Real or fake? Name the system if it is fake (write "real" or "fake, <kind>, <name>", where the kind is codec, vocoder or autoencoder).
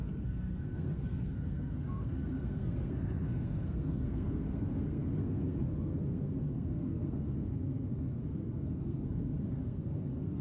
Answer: fake, codec, SNAC